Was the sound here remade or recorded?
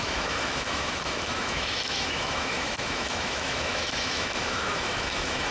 remade